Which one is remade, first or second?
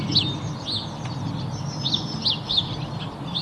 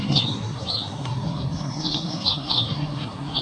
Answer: second